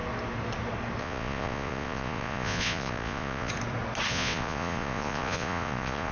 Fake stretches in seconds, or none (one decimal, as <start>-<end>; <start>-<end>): 1.0-3.5; 4.1-6.1